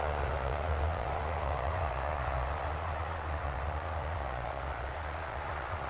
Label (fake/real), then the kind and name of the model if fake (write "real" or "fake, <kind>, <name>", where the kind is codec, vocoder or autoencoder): fake, vocoder, Vocos